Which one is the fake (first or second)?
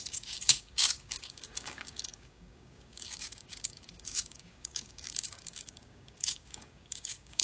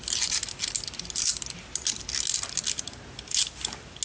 first